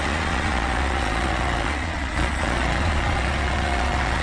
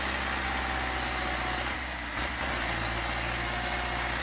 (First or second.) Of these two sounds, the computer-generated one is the first